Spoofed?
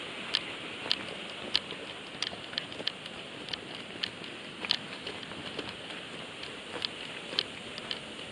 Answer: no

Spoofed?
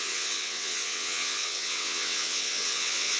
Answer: yes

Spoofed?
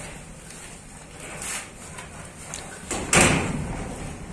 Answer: no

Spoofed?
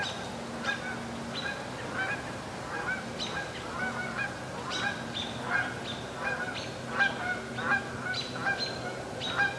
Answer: no